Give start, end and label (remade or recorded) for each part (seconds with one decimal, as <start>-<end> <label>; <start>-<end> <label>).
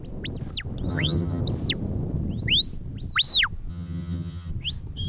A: 0.0-0.9 recorded; 0.9-1.4 remade; 1.4-3.7 recorded; 3.7-4.5 remade; 4.5-5.1 recorded